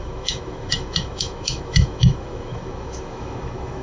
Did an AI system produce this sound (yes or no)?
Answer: yes